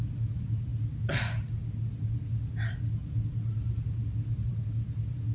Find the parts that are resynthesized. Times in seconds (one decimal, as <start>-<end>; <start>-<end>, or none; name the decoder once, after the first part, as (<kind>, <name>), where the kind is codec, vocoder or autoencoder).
none

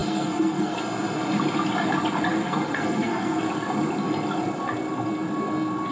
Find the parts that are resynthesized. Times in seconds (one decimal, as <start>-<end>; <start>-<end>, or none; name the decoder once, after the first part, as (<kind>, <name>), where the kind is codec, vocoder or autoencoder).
0.0-0.8 (codec, SNAC); 2.4-3.4